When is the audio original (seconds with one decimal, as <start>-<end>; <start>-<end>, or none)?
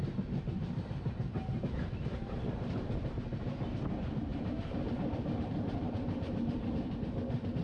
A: 2.4-4.3; 4.9-7.6